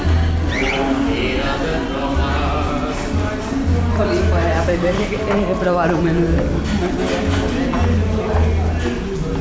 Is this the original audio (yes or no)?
yes